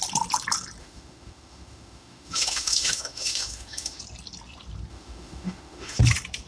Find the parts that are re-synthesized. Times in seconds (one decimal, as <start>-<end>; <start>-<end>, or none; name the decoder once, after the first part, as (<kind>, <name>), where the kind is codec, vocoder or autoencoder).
0.8-4.0 (autoencoder, DAC-VAE); 4.9-6.0